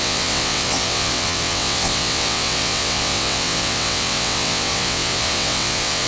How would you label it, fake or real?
fake